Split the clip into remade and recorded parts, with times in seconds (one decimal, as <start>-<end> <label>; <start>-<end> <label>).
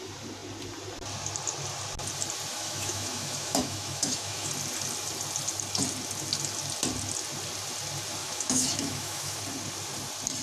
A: 0.0-2.5 recorded; 2.5-4.5 remade; 4.5-8.2 recorded; 8.2-9.4 remade; 9.4-10.4 recorded